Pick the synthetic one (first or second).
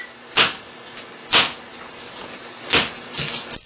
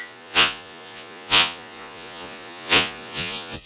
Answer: second